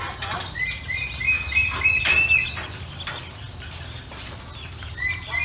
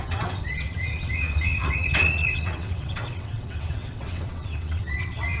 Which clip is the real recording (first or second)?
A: first